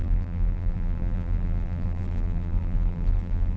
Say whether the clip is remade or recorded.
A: remade